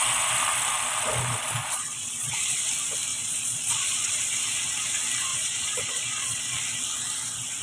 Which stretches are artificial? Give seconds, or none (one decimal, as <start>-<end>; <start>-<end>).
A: 1.4-2.7; 3.1-4.2; 5.3-6.4